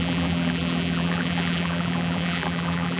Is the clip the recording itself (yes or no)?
no